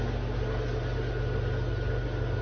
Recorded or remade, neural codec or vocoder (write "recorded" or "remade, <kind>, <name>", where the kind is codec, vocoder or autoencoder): recorded